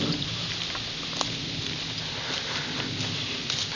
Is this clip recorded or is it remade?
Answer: recorded